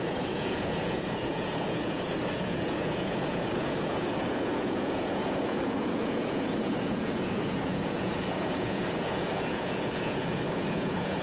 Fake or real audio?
fake